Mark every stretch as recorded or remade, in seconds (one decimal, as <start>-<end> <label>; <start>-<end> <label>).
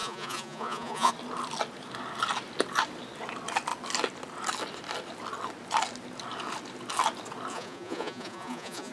0.0-1.1 remade; 1.1-7.5 recorded; 7.5-8.9 remade